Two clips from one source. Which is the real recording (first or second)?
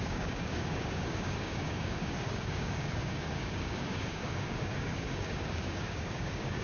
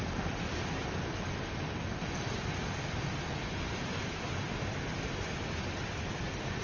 second